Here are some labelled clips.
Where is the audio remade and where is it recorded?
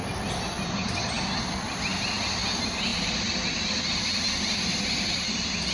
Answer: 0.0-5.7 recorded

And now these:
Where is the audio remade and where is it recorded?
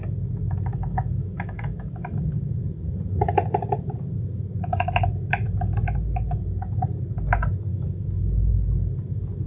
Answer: 0.0-0.4 recorded; 0.4-1.9 remade; 1.9-7.7 recorded; 7.7-8.5 remade; 8.5-9.5 recorded